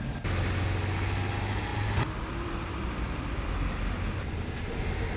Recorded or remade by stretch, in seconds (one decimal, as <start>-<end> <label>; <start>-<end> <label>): 0.0-1.7 recorded; 1.7-4.8 remade; 4.8-5.2 recorded